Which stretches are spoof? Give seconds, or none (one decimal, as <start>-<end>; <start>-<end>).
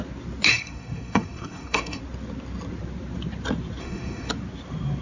0.5-2.0; 3.8-4.3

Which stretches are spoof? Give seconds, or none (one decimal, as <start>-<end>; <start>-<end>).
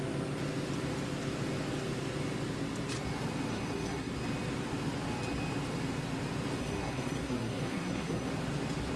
3.5-4.1; 6.6-8.3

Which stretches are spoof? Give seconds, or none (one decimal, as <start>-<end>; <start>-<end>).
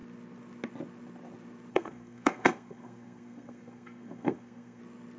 1.7-4.8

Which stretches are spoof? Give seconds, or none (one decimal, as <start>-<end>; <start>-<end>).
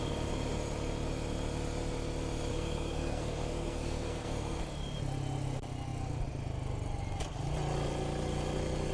2.5-4.6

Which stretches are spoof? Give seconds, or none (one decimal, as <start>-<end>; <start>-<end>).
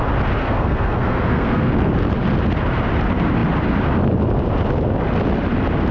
0.4-1.7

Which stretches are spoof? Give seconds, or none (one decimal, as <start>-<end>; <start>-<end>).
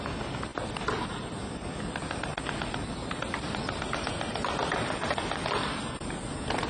none